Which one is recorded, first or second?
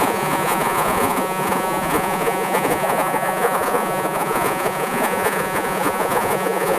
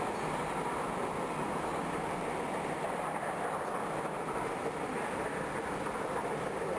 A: second